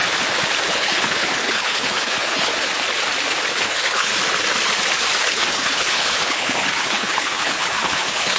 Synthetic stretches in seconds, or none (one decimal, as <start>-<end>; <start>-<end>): 0.7-2.5; 3.5-4.1; 5.2-8.4